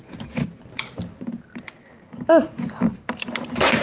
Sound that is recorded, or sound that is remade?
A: remade